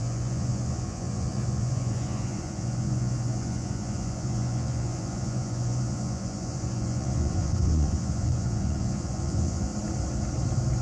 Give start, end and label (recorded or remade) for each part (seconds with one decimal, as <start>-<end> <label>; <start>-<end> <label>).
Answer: 0.0-9.7 remade; 9.7-10.8 recorded